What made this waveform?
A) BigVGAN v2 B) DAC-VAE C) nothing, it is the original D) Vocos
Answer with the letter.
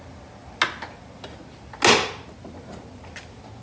C